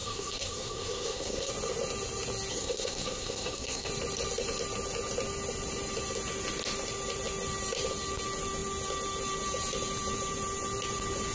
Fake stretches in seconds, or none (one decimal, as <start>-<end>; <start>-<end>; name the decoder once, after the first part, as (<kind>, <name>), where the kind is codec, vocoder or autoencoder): 0.0-1.5 (codec, SNAC); 2.5-3.9